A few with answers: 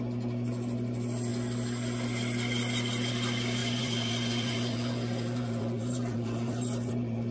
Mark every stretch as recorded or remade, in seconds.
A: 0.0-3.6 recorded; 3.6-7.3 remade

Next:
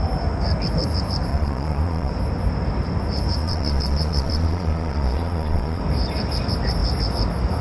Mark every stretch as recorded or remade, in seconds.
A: 0.0-1.3 recorded; 1.3-2.1 remade; 2.1-3.4 recorded; 3.4-5.8 remade; 5.8-7.6 recorded

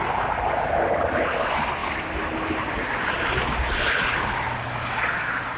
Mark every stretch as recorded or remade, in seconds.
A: 0.0-5.6 recorded

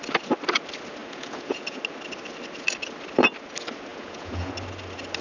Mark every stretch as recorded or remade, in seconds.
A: 0.0-1.0 recorded; 1.0-1.8 remade; 1.8-3.9 recorded; 3.9-4.5 remade; 4.5-5.2 recorded

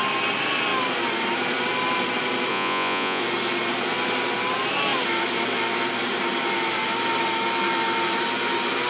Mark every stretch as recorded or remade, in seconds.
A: 0.0-2.5 recorded; 2.5-3.2 remade; 3.2-8.9 recorded

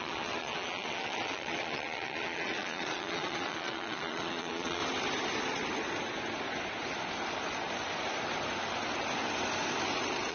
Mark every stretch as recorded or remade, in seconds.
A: 0.0-4.8 remade; 4.8-10.3 recorded